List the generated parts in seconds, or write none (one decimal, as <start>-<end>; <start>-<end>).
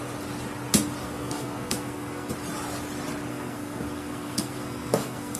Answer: 1.0-2.3; 3.3-5.4